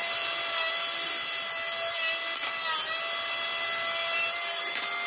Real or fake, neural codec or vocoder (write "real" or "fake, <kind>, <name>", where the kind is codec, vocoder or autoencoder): real